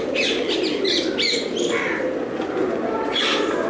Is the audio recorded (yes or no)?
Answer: yes